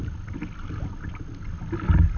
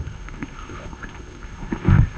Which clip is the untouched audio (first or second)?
first